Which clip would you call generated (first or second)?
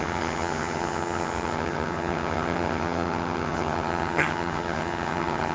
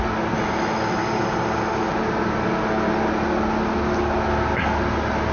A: first